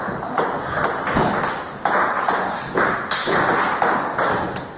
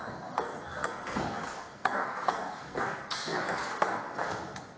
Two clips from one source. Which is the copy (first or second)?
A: second